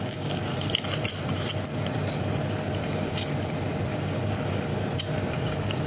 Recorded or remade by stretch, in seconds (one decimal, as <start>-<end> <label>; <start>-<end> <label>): 0.0-0.5 remade; 0.5-3.9 recorded; 3.9-4.7 remade; 4.7-5.2 recorded; 5.2-5.9 remade